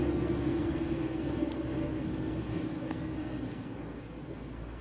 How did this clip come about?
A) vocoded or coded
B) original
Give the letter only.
A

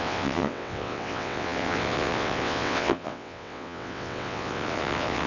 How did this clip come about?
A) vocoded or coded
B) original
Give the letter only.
A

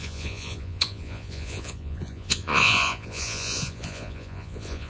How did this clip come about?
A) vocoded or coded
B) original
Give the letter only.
A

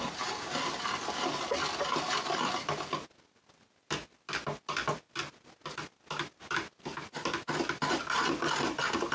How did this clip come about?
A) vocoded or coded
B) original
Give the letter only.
B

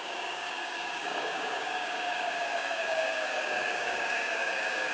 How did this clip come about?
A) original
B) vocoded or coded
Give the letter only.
B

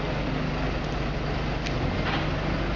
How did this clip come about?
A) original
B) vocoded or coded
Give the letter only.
A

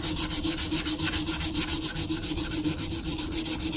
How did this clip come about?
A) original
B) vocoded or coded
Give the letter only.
A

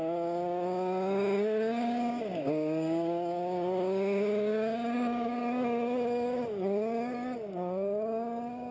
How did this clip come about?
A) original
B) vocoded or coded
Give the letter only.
B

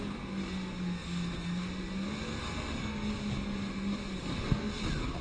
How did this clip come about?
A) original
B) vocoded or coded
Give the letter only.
A